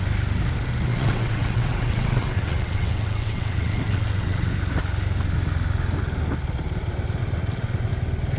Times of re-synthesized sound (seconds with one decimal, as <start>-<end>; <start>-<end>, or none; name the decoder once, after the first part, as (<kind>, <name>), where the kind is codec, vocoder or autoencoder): 0.9-4.5 (vocoder, WaveNeXt); 7.2-7.9